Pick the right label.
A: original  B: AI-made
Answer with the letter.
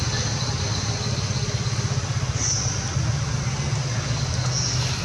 A